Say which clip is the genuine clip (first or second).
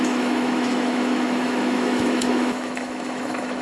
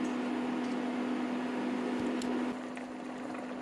second